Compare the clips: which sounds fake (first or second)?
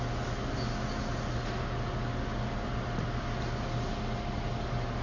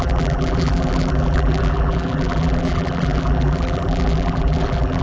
second